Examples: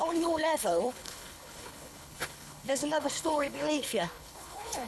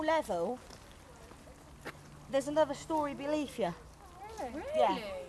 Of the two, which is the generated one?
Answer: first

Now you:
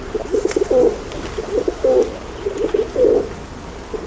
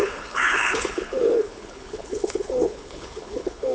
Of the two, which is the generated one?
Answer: second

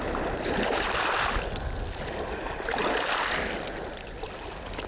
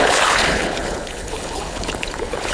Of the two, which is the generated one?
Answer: second